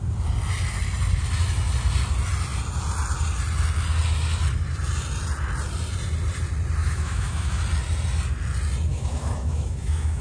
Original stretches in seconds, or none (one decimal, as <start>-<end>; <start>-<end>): 0.0-6.8; 7.6-8.9